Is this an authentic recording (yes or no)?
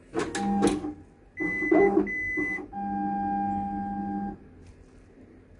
yes